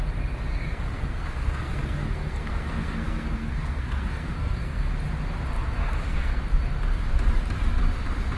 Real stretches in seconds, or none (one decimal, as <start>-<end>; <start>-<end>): 0.0-0.5; 4.8-5.8; 6.4-8.4